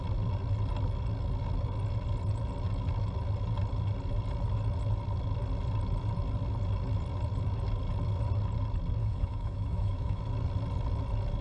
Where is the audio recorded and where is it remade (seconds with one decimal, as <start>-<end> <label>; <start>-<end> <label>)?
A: 0.0-9.0 recorded; 9.0-10.2 remade; 10.2-11.4 recorded